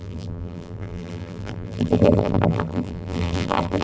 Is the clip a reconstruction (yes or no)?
yes